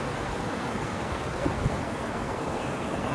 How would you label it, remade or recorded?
remade